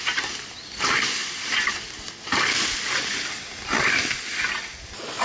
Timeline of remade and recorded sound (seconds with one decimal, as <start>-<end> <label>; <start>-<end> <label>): 0.0-5.2 recorded